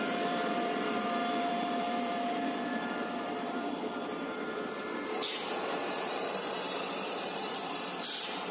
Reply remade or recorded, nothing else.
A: remade